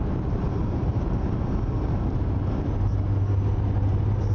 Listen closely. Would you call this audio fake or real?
real